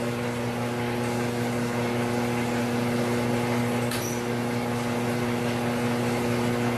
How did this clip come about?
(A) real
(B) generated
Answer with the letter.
A